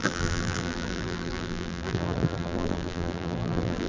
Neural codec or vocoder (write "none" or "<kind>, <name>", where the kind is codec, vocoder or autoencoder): vocoder, BigVGAN v2